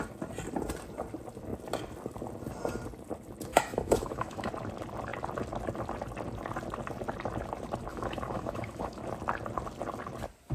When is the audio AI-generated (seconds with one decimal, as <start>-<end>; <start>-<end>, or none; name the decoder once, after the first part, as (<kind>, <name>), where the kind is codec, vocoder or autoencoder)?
3.5-4.5 (autoencoder, DAC-VAE); 7.9-9.0